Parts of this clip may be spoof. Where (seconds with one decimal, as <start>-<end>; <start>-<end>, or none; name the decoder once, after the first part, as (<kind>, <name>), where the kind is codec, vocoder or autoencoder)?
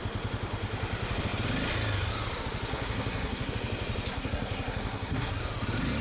2.7-3.5 (codec, SNAC); 4.1-5.4